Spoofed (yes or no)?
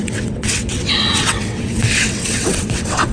yes